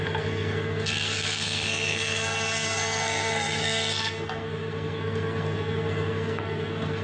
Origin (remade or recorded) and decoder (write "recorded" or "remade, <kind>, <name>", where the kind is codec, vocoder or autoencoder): remade, codec, SNAC